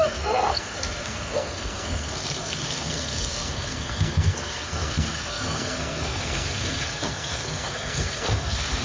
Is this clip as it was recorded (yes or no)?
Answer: no